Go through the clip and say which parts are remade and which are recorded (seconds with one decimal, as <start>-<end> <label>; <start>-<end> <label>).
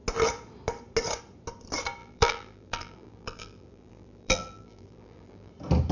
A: 0.0-2.0 recorded; 2.0-5.5 remade; 5.5-5.9 recorded